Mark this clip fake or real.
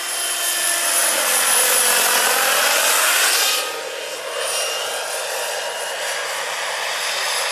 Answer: real